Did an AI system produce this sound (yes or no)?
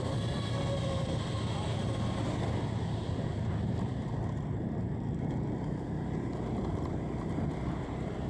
yes